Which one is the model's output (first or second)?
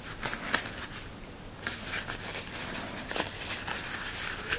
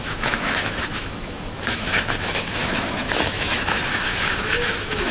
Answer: second